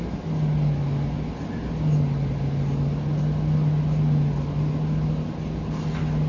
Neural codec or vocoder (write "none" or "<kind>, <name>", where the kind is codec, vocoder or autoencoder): none